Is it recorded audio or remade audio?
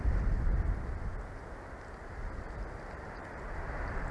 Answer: recorded